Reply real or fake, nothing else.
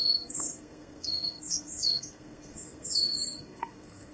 fake